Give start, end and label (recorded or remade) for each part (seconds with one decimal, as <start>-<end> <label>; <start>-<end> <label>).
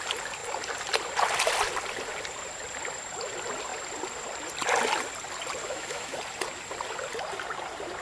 0.0-5.6 recorded; 5.6-6.2 remade; 6.2-8.0 recorded